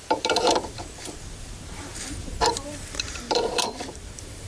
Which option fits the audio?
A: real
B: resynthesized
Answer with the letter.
B